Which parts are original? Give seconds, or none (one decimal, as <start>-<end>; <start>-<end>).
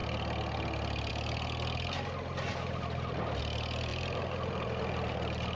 0.0-2.5; 3.4-3.9